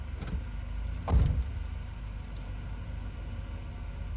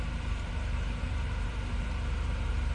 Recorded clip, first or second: first